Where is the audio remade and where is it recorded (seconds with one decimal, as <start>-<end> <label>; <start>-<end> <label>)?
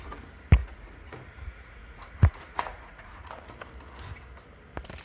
0.0-0.6 recorded; 0.6-3.3 remade; 3.3-5.0 recorded